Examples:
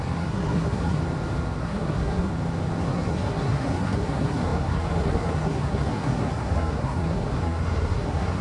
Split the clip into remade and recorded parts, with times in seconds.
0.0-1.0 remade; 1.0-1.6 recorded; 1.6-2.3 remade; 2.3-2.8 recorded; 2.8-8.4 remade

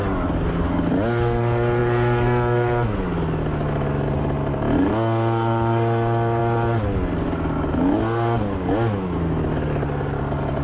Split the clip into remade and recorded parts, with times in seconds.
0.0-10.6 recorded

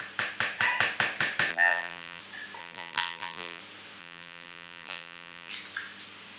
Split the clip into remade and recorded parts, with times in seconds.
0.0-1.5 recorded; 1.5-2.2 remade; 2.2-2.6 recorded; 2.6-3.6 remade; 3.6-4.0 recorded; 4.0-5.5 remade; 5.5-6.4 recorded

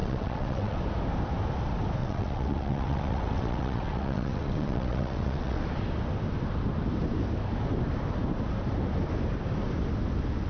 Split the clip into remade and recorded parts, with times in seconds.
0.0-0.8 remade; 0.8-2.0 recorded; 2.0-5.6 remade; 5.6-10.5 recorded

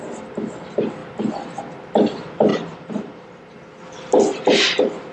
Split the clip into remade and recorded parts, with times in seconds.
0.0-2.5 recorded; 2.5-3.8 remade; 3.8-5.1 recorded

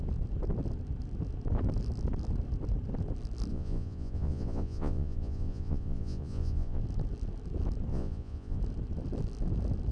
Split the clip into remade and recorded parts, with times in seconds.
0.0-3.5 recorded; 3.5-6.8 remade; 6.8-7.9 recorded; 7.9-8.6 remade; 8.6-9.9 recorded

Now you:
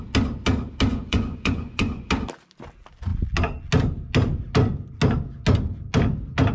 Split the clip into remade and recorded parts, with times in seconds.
0.0-0.9 recorded; 0.9-2.1 remade; 2.1-6.5 recorded

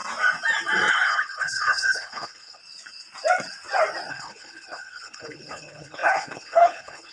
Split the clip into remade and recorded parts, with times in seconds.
0.0-0.9 recorded; 0.9-2.6 remade; 2.6-4.1 recorded; 4.1-7.1 remade